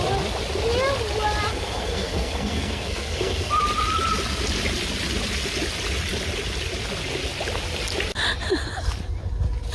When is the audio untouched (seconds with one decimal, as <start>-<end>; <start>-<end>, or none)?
0.0-1.5; 3.5-9.7